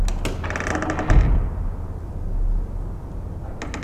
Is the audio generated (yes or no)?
no